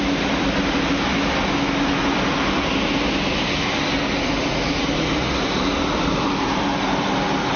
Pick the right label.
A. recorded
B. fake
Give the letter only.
A